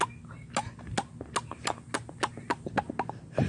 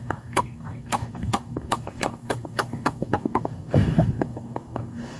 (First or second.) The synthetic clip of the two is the second